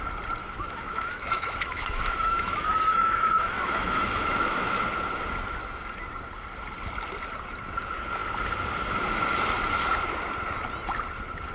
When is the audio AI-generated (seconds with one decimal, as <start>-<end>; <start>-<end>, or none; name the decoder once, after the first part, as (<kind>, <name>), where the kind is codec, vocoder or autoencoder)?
0.4-4.8 (autoencoder, DAC-VAE)